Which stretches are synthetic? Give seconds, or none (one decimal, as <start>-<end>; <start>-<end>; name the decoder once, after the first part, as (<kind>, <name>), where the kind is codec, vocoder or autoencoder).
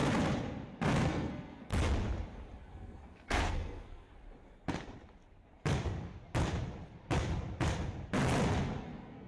0.9-1.7 (codec, SNAC); 2.6-4.1; 8.8-9.3